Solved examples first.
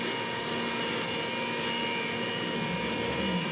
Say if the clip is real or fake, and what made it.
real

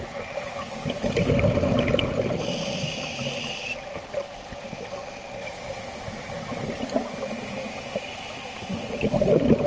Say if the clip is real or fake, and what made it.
real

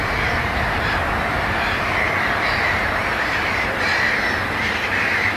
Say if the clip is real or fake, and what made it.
fake, vocoder, BigVGAN v2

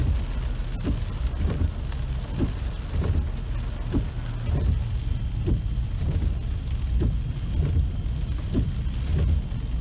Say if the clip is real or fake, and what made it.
real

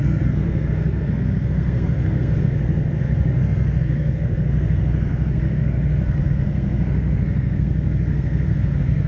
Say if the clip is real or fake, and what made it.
fake, codec, SNAC